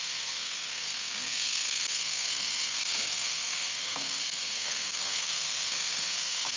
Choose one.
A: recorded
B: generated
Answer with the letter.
B